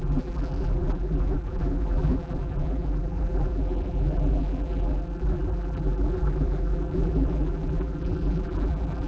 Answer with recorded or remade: remade